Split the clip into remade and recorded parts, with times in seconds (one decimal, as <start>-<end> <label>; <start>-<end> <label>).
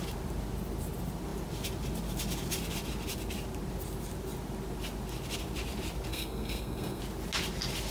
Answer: 0.0-6.1 recorded; 6.1-7.0 remade; 7.0-7.9 recorded